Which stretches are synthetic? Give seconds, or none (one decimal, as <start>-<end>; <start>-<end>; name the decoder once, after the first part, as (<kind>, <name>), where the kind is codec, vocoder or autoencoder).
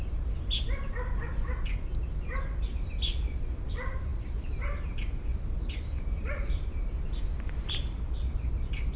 0.0-9.0 (vocoder, BigVGAN v2)